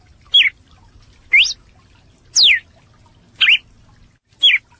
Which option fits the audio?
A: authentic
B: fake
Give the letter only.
A